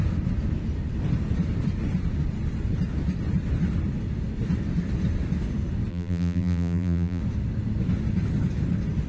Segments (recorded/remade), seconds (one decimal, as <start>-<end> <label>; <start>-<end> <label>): 0.0-5.9 recorded; 5.9-7.2 remade; 7.2-9.1 recorded